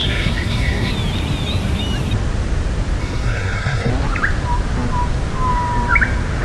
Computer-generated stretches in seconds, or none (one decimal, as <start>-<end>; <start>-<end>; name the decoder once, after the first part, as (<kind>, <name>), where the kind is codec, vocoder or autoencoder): 0.0-0.9 (codec, SNAC); 3.0-3.9

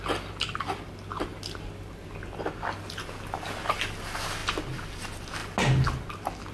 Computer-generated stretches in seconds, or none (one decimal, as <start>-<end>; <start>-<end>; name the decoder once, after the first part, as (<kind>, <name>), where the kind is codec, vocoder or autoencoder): none